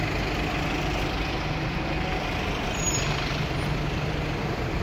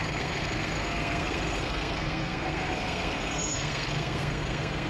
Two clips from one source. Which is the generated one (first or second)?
second